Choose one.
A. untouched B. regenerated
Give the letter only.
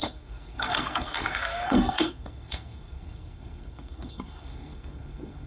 B